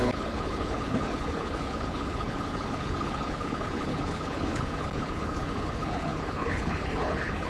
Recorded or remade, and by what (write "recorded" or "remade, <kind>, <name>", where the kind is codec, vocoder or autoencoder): remade, codec, HILCodec